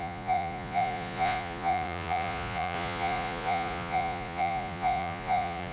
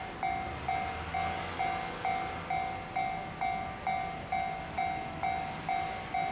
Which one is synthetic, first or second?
first